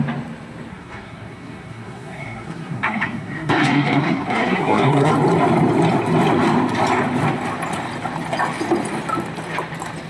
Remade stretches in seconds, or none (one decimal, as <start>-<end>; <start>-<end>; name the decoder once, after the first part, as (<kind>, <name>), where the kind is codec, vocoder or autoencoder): 0.7-5.1 (codec, SNAC)